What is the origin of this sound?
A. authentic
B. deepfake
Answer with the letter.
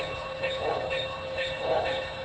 B